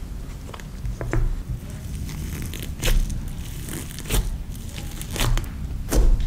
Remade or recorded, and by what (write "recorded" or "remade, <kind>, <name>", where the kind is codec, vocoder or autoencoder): recorded